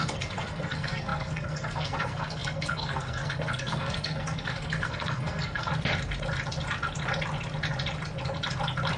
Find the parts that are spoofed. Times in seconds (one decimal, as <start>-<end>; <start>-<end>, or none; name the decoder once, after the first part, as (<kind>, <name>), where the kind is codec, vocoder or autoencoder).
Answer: 0.0-5.7 (codec, SNAC)